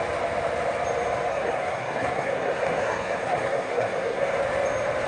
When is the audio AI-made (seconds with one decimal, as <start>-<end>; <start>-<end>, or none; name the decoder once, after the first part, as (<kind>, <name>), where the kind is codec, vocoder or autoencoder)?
1.3-4.4 (codec, SNAC)